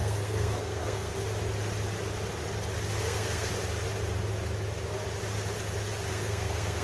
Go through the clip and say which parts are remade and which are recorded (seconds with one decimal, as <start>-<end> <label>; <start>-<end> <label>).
0.0-1.1 remade; 1.1-3.0 recorded; 3.0-3.5 remade; 3.5-6.1 recorded; 6.1-6.8 remade